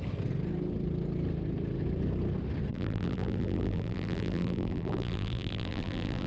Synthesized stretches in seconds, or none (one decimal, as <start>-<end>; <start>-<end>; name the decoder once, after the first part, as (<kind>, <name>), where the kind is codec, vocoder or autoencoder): 2.7-6.3 (vocoder, BigVGAN v2)